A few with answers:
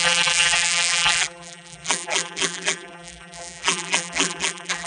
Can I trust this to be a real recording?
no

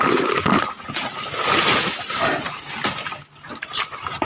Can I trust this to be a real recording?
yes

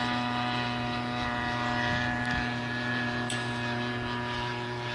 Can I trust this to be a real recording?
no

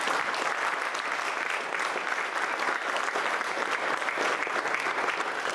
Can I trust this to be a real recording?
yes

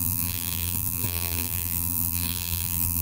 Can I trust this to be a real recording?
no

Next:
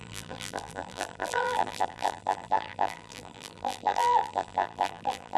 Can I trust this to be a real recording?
no